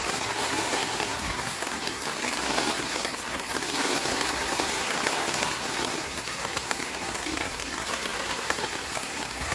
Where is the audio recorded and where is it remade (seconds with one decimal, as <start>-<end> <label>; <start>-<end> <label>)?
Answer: 0.0-9.5 remade